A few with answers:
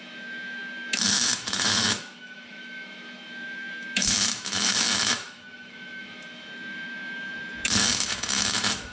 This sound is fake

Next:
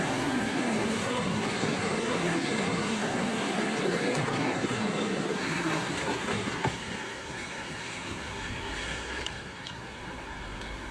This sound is fake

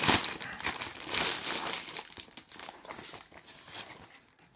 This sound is real